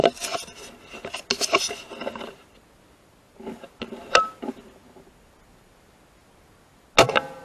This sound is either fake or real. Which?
real